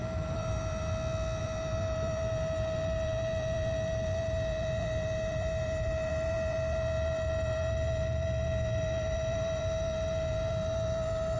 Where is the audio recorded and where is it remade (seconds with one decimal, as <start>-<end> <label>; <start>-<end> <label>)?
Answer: 0.0-0.9 remade; 0.9-1.4 recorded; 1.4-11.4 remade

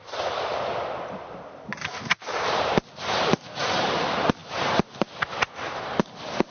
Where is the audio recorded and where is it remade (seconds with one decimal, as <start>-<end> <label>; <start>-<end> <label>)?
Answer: 0.0-1.7 recorded; 1.7-2.8 remade; 2.8-6.5 recorded

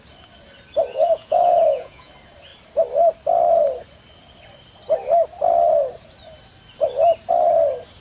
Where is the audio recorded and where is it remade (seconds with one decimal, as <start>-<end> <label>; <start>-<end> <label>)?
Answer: 0.0-0.9 recorded; 0.9-2.1 remade; 2.1-8.0 recorded

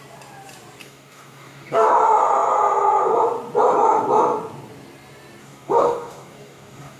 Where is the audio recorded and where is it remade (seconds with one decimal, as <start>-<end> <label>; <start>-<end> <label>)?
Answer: 0.0-0.8 recorded; 0.8-1.9 remade; 1.9-5.4 recorded; 5.4-7.0 remade

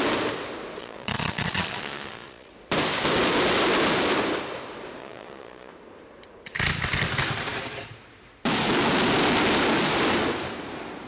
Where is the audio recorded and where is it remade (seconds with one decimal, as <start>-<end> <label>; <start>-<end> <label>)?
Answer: 0.0-0.8 recorded; 0.8-2.5 remade; 2.5-5.0 recorded; 5.0-5.7 remade; 5.7-11.1 recorded

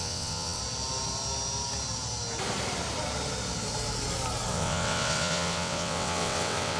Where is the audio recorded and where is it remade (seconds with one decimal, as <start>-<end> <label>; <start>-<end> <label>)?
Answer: 0.0-0.6 remade; 0.6-4.5 recorded; 4.5-6.8 remade